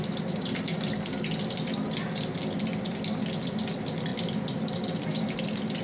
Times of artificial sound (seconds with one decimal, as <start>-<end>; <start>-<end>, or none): none